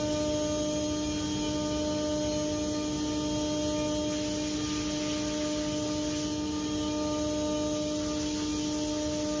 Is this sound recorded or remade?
recorded